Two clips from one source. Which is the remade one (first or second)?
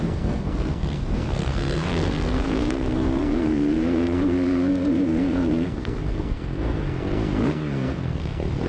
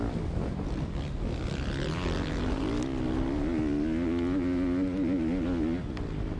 first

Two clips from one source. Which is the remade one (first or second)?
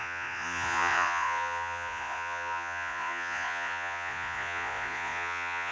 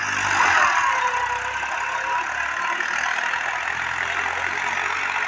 first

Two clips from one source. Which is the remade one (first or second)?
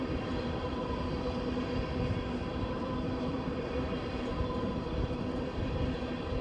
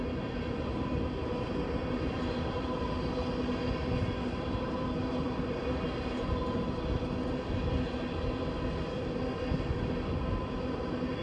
first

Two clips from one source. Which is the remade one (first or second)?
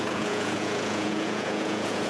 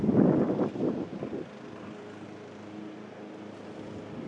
first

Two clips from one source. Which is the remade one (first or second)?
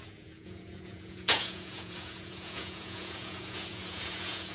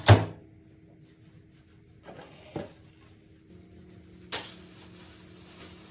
first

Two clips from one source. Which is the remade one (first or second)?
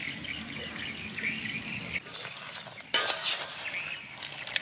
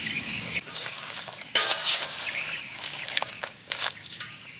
second